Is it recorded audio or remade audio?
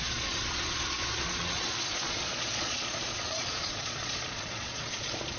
remade